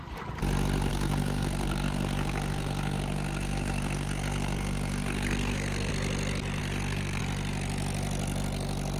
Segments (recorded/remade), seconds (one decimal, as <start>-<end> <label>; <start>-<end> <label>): 0.0-0.9 recorded; 0.9-5.9 remade; 5.9-6.6 recorded; 6.6-7.2 remade; 7.2-9.0 recorded